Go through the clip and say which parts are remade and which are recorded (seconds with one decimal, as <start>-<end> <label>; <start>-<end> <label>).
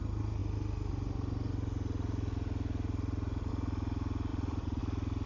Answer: 0.0-4.3 recorded; 4.3-4.8 remade; 4.8-5.3 recorded